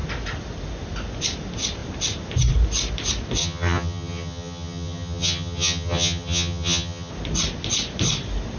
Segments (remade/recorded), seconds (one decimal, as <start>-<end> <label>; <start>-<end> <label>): 0.0-3.4 recorded; 3.4-7.1 remade; 7.1-8.6 recorded

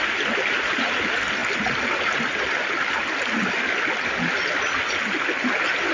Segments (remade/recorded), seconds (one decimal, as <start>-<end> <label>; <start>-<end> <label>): 0.0-5.9 recorded

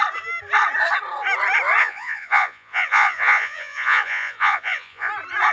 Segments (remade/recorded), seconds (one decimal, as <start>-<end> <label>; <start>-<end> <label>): 0.0-1.8 recorded; 1.8-5.1 remade; 5.1-5.5 recorded